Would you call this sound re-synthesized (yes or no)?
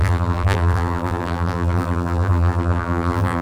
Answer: yes